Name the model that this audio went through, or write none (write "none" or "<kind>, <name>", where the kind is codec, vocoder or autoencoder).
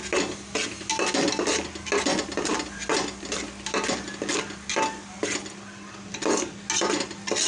none